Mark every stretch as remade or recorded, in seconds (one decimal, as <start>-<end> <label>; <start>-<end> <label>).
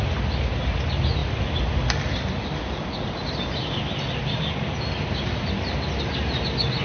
0.0-6.8 recorded